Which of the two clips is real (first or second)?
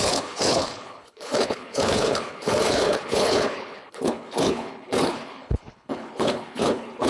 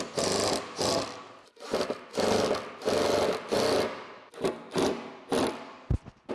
second